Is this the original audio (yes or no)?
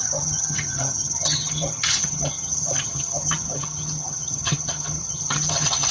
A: no